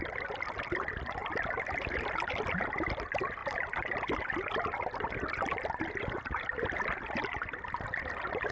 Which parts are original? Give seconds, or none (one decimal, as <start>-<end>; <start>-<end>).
0.0-8.5